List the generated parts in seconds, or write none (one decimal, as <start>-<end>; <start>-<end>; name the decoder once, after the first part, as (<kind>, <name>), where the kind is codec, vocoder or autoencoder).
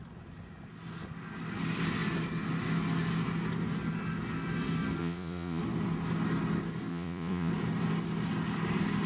5.0-5.6 (vocoder, Vocos); 6.9-7.5